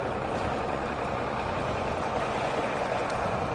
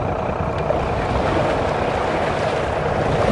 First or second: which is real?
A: second